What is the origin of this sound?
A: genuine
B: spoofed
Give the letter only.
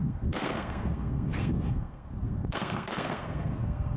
B